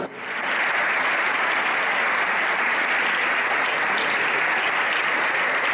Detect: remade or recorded recorded